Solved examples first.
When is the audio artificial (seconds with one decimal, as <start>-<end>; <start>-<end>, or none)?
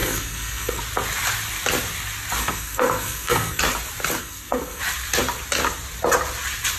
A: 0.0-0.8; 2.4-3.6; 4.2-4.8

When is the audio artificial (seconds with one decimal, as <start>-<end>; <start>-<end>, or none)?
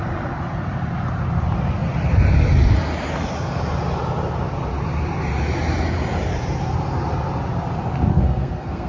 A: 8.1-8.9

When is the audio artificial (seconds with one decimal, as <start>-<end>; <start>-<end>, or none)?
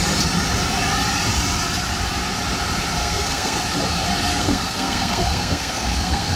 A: 3.0-3.6; 4.3-6.4